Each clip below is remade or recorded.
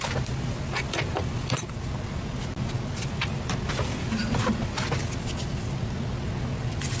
recorded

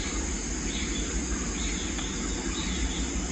recorded